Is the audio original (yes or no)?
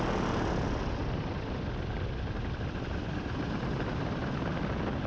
yes